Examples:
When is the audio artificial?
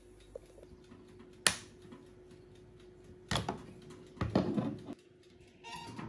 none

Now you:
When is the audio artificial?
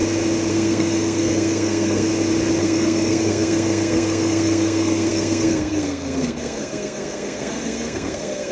0.5-2.1; 2.6-8.5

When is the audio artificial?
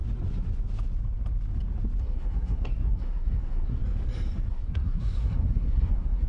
2.0-3.8; 4.5-6.3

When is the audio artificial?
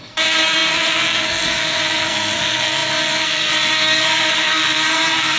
0.0-5.4